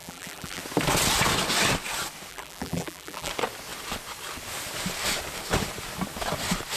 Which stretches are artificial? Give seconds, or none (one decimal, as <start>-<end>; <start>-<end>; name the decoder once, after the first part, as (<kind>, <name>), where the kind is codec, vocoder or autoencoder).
0.0-0.6 (vocoder, BigVGAN v2); 2.3-3.3